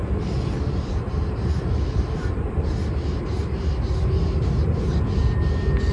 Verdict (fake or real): real